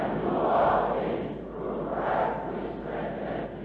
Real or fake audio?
real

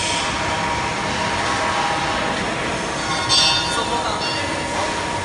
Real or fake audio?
real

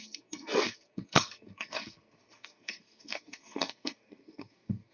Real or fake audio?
fake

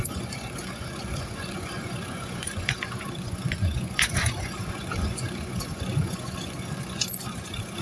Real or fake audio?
fake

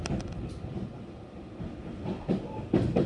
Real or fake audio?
real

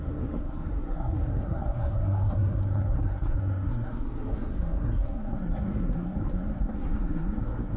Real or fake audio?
fake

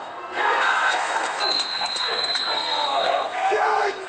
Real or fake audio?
fake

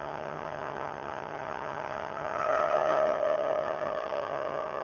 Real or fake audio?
fake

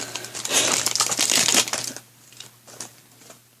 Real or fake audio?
fake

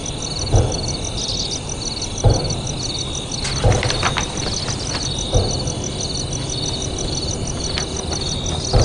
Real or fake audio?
real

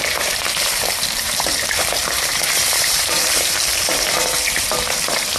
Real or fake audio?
fake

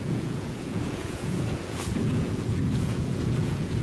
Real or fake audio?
fake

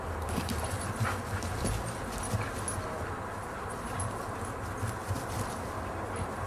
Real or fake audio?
real